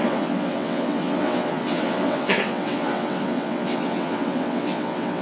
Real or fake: fake